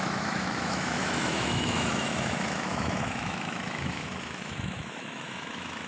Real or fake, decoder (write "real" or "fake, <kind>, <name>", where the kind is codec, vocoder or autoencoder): fake, autoencoder, DAC-VAE